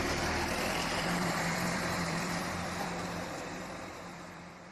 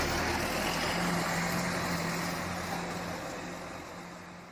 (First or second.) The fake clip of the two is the first